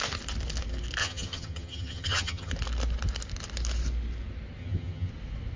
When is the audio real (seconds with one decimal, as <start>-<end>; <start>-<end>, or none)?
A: 0.0-1.0; 2.5-4.6; 5.1-5.6